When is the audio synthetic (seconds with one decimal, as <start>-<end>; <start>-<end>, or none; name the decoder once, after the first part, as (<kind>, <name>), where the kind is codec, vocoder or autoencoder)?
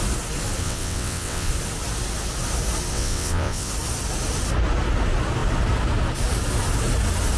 0.6-1.5 (vocoder, WaveNeXt); 2.9-3.7